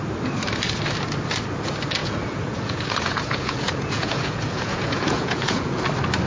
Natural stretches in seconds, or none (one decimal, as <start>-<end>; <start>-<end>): 0.0-2.0; 5.8-6.3